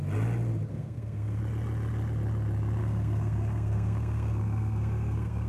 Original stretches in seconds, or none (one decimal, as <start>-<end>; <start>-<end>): 0.0-0.7; 1.4-2.8